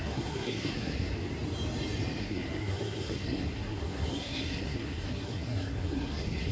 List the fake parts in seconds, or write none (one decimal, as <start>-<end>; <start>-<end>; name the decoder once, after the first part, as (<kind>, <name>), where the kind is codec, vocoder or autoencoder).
0.0-1.1 (codec, SNAC); 2.2-6.5